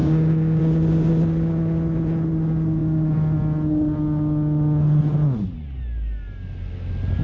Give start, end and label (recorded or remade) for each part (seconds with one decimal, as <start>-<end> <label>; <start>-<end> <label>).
0.0-0.6 remade; 0.6-7.2 recorded